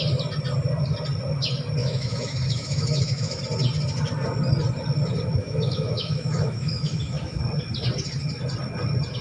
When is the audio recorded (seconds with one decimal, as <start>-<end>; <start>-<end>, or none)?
0.0-1.8; 3.4-5.4; 7.4-9.2